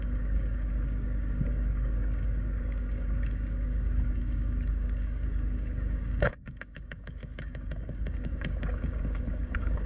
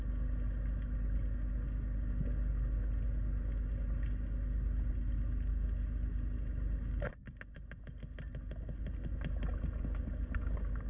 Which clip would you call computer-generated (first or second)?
first